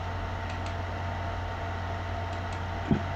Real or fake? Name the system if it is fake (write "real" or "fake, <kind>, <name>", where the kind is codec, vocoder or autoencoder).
real